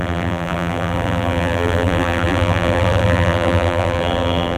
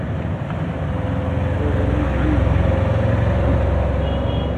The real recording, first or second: second